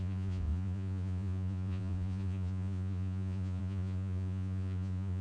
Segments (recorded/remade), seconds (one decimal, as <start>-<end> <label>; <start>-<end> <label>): 0.0-5.2 remade